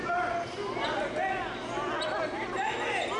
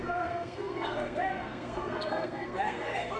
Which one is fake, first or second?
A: second